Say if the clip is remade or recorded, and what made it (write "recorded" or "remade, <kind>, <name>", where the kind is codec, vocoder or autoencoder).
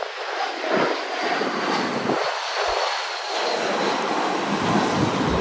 recorded